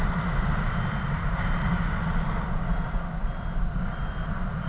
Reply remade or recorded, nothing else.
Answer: recorded